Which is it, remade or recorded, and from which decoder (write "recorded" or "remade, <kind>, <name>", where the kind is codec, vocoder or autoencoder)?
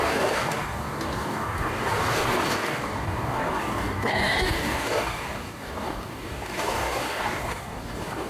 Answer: remade, codec, DAC